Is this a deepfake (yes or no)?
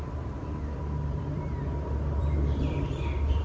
yes